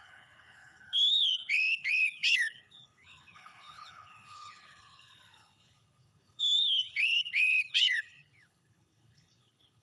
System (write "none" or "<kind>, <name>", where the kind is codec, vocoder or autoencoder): codec, HILCodec